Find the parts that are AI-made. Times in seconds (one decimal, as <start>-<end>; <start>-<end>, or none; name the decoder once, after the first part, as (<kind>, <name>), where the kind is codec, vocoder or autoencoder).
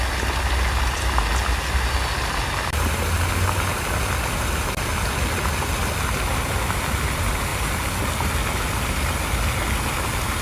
none